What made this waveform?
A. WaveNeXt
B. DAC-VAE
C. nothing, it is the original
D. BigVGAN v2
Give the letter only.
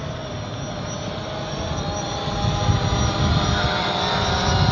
C